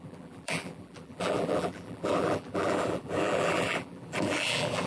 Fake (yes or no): yes